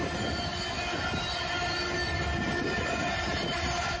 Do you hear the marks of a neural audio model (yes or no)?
no